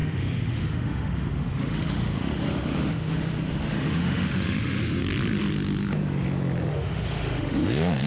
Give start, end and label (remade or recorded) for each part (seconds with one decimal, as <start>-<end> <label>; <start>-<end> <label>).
0.0-5.0 remade; 5.0-6.7 recorded; 6.7-8.1 remade